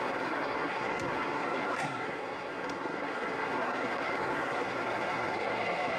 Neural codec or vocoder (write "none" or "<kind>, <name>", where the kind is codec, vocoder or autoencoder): codec, SNAC